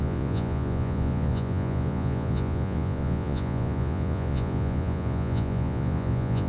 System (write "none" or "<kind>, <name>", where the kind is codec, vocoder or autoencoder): vocoder, Vocos